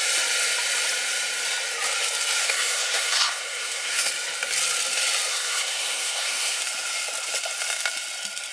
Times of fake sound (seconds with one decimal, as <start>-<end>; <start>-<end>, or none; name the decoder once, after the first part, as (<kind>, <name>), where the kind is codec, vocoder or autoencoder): 2.4-4.1 (codec, SNAC); 5.3-6.6